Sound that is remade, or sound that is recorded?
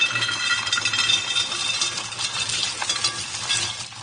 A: recorded